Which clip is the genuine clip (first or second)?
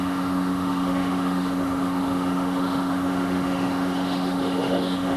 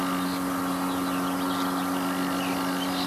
second